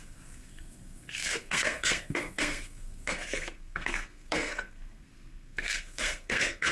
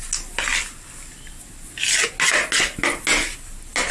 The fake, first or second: first